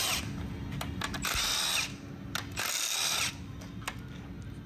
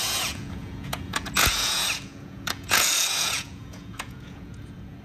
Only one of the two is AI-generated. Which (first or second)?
second